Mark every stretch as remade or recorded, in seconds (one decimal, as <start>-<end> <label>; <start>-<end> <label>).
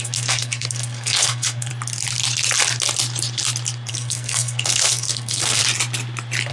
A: 0.0-1.7 remade; 1.7-3.9 recorded; 3.9-5.6 remade; 5.6-6.5 recorded